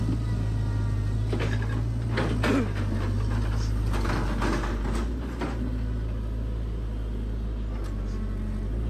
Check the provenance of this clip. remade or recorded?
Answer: recorded